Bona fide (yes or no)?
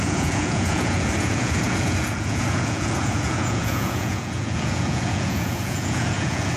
no